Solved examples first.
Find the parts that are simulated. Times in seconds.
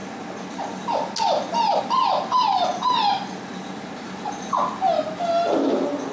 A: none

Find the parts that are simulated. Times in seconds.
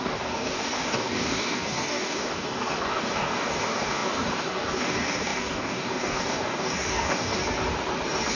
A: 0.0-7.4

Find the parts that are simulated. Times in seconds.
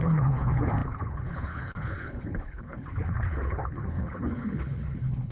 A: 0.0-5.3